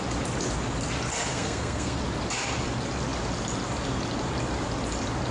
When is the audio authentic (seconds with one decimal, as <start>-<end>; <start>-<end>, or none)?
0.0-1.3; 2.0-5.3